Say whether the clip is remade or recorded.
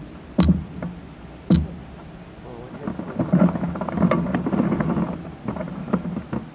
recorded